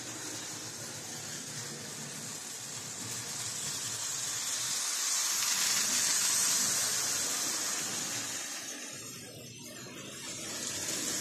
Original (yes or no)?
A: yes